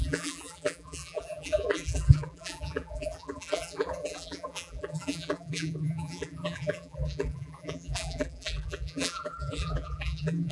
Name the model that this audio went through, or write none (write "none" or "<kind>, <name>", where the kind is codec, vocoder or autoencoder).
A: vocoder, BigVGAN v2